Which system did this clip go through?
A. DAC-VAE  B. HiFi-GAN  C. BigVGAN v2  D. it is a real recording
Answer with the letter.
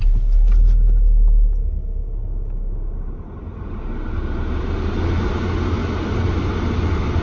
D